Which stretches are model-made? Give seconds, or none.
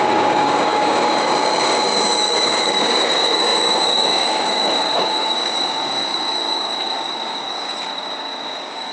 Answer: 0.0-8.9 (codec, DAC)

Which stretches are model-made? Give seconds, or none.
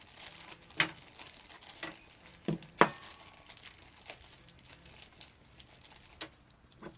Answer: none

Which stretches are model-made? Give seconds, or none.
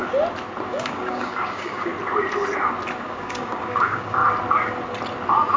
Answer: 0.7-1.9 (codec, DAC); 3.0-4.2